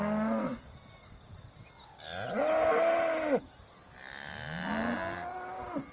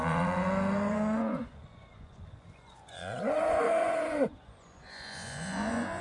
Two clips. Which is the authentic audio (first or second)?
first